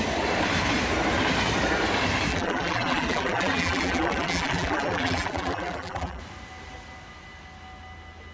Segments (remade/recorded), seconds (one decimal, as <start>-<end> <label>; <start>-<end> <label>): 0.0-2.3 recorded; 2.3-6.2 remade; 6.2-8.3 recorded